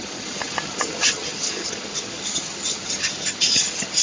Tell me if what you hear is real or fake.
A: fake